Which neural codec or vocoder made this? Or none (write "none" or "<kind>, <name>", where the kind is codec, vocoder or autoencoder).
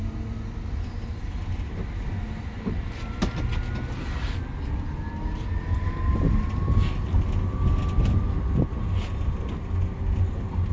none